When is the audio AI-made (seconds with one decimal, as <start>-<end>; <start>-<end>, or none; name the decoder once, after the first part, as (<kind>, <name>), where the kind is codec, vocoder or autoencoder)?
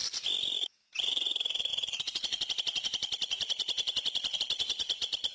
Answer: 0.6-5.3 (vocoder, BigVGAN v2)